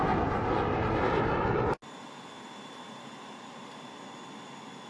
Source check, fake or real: real